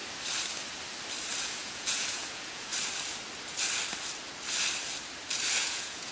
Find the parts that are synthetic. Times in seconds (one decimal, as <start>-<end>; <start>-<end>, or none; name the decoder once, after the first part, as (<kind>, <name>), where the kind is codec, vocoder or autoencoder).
1.4-2.7 (vocoder, Vocos); 5.6-6.1